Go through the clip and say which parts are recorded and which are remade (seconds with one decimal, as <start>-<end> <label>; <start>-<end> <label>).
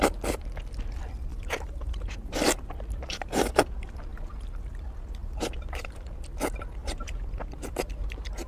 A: 0.0-1.3 recorded; 1.3-3.5 remade; 3.5-5.2 recorded; 5.2-6.3 remade; 6.3-6.8 recorded; 6.8-8.5 remade